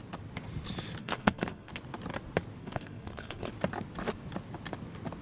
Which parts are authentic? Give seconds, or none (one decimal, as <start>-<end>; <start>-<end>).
0.0-1.0; 1.7-2.6; 3.5-5.2